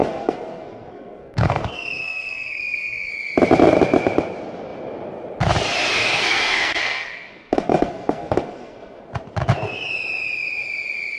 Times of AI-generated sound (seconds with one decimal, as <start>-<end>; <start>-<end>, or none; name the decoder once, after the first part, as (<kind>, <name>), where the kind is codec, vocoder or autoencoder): 0.0-3.1 (codec, SNAC); 6.0-9.1

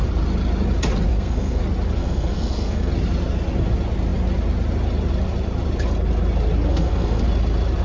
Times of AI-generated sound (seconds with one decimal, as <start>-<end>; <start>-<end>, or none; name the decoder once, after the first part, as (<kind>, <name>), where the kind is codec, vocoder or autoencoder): 1.1-1.6 (codec, SNAC); 2.0-2.9; 6.7-7.2

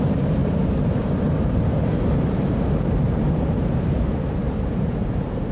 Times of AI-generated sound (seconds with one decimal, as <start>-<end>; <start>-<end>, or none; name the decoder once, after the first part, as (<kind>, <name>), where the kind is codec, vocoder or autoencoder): 0.0-5.5 (vocoder, BigVGAN v2)

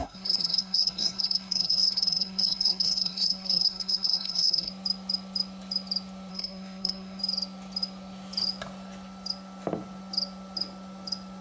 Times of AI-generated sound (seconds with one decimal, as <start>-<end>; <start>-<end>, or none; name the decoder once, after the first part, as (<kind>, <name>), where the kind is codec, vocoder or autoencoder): 0.0-4.7 (codec, SNAC); 6.3-7.2

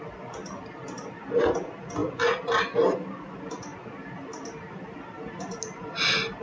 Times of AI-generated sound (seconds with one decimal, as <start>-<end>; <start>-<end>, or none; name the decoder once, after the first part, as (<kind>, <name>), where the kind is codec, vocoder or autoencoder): none

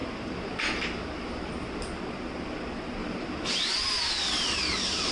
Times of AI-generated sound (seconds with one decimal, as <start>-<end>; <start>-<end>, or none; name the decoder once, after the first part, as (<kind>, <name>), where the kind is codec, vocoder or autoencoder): 0.0-1.5 (vocoder, BigVGAN v2); 3.0-4.0

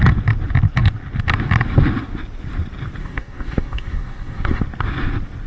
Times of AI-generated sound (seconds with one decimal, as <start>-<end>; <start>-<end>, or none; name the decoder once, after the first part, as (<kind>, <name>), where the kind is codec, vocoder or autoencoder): 3.0-4.6 (codec, DAC)